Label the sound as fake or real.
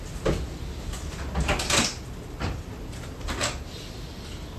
real